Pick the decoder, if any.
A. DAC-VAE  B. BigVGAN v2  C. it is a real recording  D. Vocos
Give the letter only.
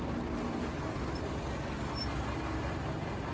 C